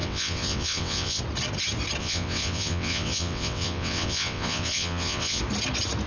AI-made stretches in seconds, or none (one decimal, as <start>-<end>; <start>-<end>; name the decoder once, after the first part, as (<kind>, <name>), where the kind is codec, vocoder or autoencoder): 0.0-1.2 (vocoder, WaveNeXt); 2.0-5.4